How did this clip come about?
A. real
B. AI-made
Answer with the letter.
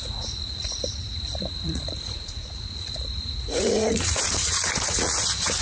B